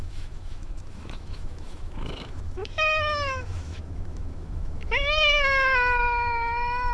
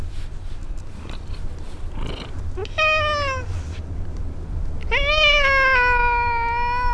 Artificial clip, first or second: first